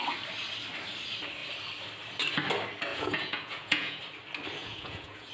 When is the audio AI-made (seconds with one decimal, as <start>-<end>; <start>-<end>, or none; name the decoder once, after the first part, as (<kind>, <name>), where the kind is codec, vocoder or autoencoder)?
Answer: 2.9-4.0 (vocoder, Vocos); 4.6-5.3